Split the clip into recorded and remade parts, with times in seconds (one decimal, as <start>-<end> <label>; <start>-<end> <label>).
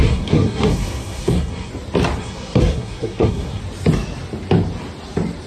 0.0-1.7 remade; 1.7-2.2 recorded; 2.2-3.6 remade; 3.6-5.5 recorded